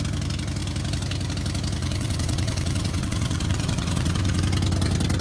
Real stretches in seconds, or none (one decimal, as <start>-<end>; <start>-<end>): 0.0-1.8; 4.4-5.2